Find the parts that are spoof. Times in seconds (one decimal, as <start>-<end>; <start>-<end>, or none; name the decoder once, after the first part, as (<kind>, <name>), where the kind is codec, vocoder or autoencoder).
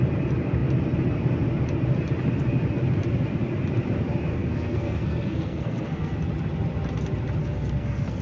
4.3-6.2 (codec, SNAC); 7.4-8.2